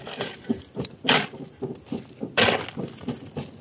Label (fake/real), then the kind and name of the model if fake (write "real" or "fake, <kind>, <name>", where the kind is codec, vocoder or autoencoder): real